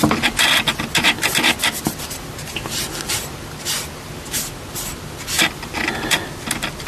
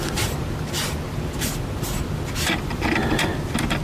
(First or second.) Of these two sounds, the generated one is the second